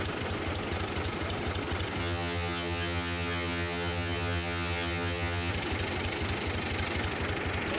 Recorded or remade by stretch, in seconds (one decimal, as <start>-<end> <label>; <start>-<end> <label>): 0.0-2.0 recorded; 2.0-5.5 remade; 5.5-7.8 recorded